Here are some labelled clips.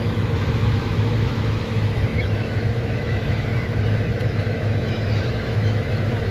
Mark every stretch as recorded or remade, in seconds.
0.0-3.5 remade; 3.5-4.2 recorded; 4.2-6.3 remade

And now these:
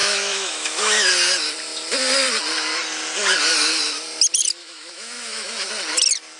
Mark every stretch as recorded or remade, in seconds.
0.0-1.1 remade; 1.1-4.6 recorded; 4.6-5.7 remade; 5.7-6.4 recorded

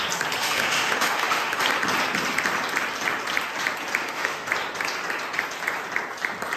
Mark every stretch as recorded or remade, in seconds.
0.0-0.4 recorded; 0.4-1.6 remade; 1.6-4.0 recorded; 4.0-4.5 remade; 4.5-6.6 recorded